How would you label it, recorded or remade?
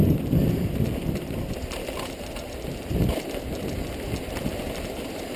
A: recorded